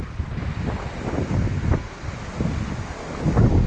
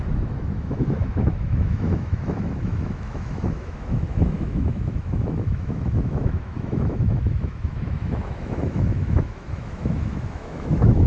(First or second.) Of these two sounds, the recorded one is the first